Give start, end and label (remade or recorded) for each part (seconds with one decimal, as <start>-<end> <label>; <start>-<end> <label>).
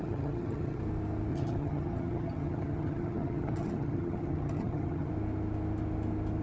0.0-0.8 remade; 0.8-1.3 recorded; 1.3-5.1 remade; 5.1-6.4 recorded